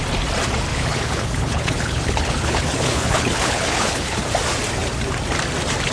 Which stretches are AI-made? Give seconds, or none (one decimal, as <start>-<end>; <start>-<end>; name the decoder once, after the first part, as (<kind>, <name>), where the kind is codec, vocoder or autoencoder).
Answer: 0.7-4.2 (codec, HILCodec)